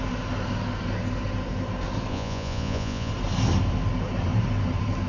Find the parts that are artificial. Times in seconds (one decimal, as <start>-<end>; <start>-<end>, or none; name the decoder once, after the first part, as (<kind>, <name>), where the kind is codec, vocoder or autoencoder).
2.1-3.1 (vocoder, Vocos)